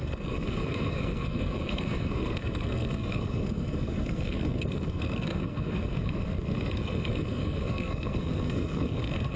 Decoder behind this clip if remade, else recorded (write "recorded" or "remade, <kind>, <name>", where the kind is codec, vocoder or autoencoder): remade, codec, SNAC